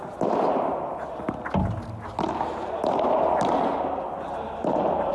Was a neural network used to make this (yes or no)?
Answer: no